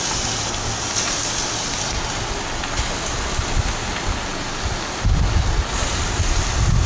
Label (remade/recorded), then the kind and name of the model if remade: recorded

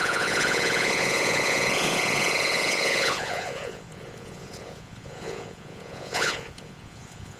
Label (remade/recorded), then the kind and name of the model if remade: remade, vocoder, Vocos